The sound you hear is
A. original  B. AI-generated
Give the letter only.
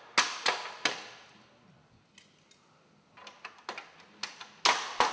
A